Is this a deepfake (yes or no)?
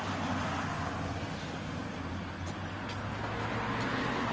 no